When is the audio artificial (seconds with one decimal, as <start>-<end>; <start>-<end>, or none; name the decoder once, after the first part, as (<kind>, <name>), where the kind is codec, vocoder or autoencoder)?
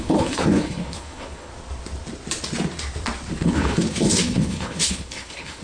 0.0-1.5 (codec, HILCodec); 3.4-5.6